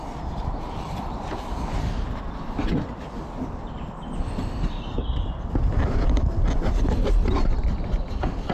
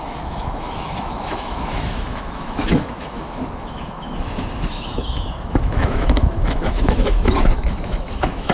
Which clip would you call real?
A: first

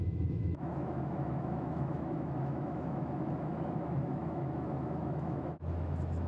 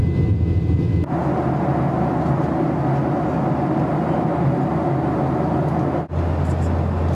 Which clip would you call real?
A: second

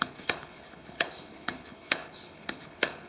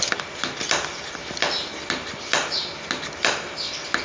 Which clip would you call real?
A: second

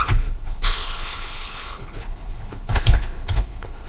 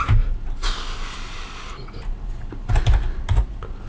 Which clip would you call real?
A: second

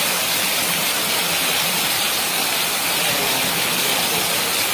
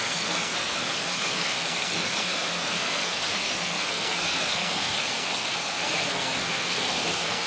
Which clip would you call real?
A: first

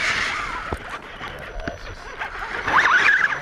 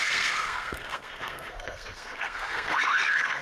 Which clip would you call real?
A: first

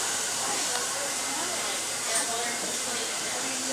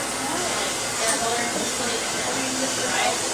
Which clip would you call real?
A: second